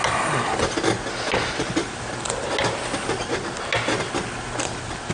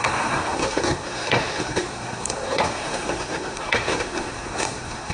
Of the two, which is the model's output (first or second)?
second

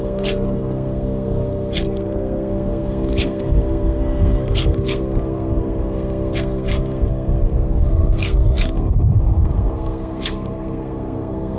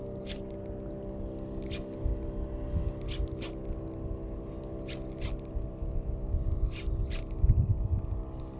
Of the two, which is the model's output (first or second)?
first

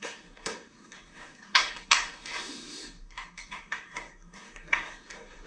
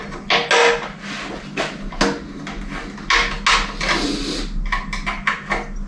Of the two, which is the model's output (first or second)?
first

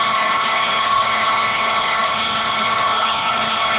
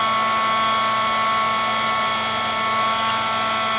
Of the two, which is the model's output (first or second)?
first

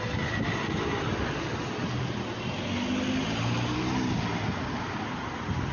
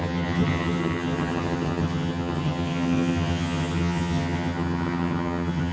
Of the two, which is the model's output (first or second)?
second